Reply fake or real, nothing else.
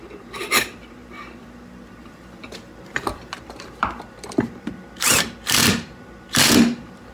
fake